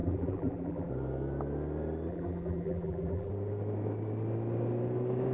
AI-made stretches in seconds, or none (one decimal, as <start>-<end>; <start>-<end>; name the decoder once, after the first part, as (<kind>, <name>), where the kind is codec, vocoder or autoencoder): 0.0-0.9 (vocoder, BigVGAN v2); 2.1-3.3